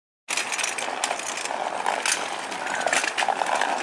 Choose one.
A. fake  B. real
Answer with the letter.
B